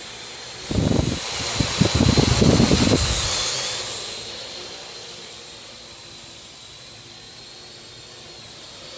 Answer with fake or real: real